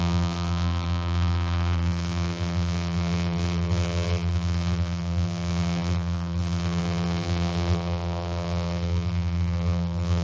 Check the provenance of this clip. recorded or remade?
remade